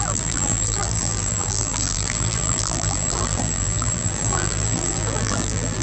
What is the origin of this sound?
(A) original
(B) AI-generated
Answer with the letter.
B